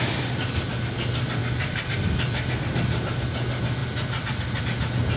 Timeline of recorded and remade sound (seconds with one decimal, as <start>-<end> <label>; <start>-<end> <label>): 0.0-5.2 recorded